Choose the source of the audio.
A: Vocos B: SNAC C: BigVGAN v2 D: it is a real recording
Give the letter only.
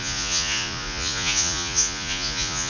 A